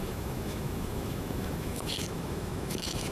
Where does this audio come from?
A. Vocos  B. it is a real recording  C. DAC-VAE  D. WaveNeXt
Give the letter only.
C